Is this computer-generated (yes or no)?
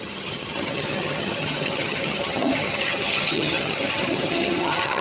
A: yes